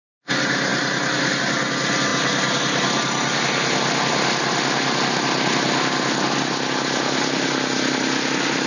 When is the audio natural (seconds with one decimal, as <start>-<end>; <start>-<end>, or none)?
0.0-8.7